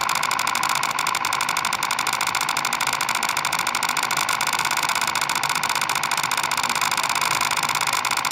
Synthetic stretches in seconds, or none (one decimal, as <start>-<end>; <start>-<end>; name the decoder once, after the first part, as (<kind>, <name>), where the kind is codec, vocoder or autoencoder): none